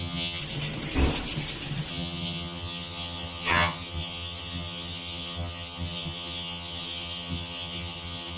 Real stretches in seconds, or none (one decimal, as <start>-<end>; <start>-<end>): 0.4-1.9